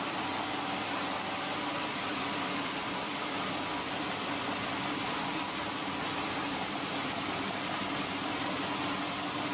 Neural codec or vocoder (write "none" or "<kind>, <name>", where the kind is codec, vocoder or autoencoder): vocoder, BigVGAN v2